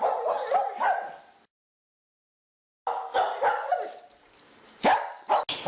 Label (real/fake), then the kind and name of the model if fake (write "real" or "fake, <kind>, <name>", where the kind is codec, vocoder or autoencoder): real